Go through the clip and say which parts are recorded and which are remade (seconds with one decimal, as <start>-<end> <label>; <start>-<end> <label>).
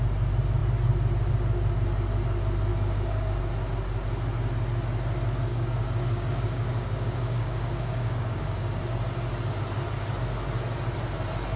0.0-2.7 recorded; 2.7-3.4 remade; 3.4-5.5 recorded; 5.5-8.8 remade; 8.8-11.6 recorded